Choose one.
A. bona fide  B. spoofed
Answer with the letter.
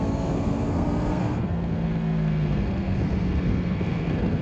B